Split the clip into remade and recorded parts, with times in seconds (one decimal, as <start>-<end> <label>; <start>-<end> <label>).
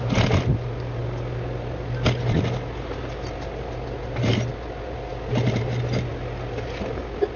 0.0-7.4 recorded